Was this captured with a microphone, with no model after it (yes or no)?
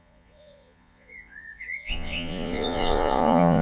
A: no